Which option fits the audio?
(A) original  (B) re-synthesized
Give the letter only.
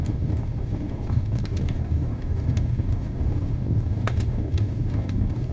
B